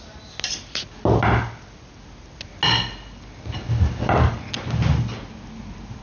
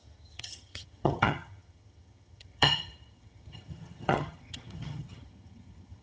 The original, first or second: first